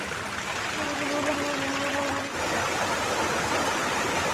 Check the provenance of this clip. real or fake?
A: real